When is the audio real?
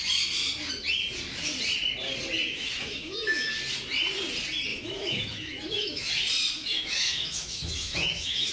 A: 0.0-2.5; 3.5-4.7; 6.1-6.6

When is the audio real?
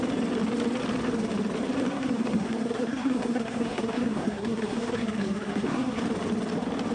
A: 0.0-1.9; 6.0-6.9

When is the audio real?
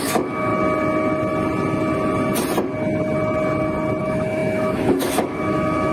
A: 0.5-4.0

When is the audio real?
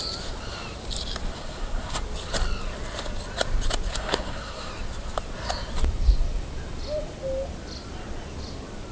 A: 0.0-1.3; 2.0-3.9; 4.7-8.9